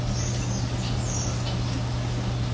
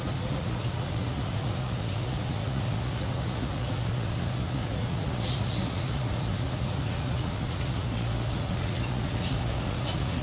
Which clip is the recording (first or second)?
first